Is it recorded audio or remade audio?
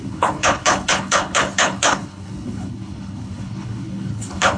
remade